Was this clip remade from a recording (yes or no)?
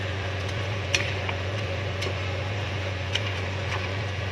yes